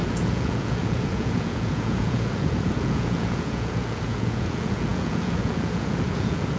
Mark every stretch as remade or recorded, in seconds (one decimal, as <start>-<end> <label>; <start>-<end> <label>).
0.0-6.6 remade